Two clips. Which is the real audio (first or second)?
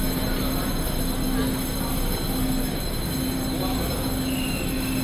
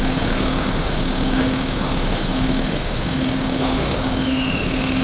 first